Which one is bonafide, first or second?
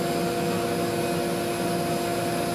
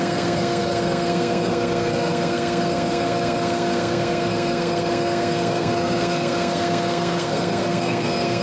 first